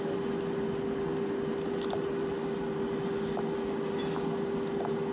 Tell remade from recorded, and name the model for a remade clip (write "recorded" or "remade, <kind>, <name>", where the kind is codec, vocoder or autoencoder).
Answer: recorded